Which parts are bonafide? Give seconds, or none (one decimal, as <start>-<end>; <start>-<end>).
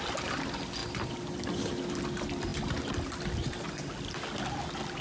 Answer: 0.0-5.0